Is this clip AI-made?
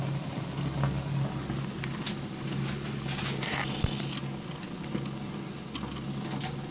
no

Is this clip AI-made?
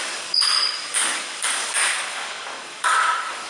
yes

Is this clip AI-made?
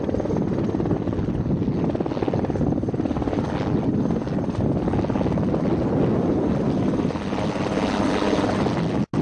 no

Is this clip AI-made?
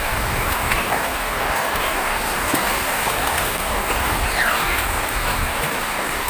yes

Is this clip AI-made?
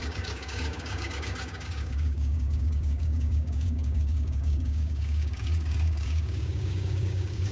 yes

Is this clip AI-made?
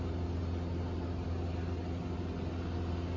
no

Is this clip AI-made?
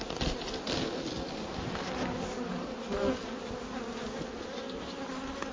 no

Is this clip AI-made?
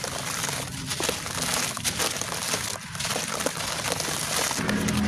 no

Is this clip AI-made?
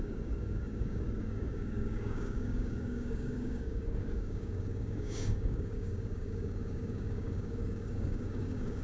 yes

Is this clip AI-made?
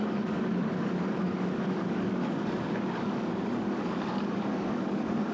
yes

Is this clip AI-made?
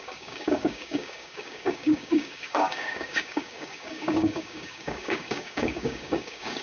yes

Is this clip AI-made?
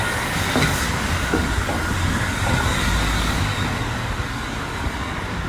yes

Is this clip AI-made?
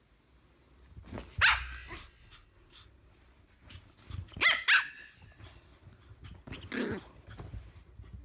no